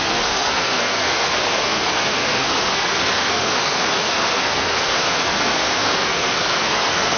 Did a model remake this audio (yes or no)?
yes